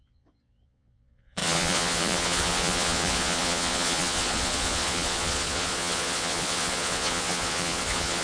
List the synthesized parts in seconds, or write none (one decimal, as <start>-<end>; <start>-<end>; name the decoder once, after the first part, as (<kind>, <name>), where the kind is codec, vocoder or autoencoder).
0.0-8.2 (vocoder, Vocos)